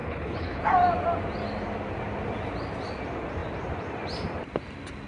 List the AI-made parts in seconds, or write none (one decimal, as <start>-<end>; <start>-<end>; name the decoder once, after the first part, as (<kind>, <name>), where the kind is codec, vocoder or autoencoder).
0.0-0.6 (codec, HILCodec)